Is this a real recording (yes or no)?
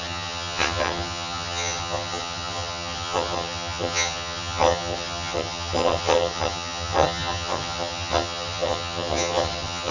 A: no